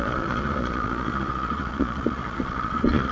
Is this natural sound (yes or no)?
no